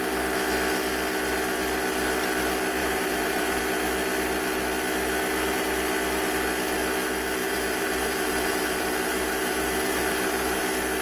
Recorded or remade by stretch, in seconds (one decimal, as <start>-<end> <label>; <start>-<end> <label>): 0.0-2.8 recorded; 2.8-3.6 remade; 3.6-7.4 recorded; 7.4-10.6 remade; 10.6-11.0 recorded